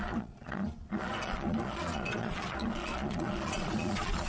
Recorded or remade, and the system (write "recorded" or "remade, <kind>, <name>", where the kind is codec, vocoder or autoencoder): remade, vocoder, Vocos